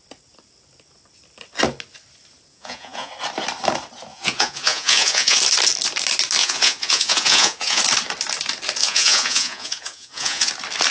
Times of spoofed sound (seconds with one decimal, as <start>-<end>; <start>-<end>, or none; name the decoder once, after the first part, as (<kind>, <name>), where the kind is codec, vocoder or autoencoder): 2.5-3.1 (vocoder, Vocos); 4.1-5.4; 6.4-7.8; 8.8-10.5